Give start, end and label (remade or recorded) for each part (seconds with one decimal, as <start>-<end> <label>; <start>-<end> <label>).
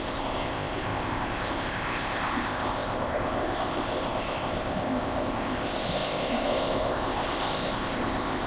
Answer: 0.0-8.5 remade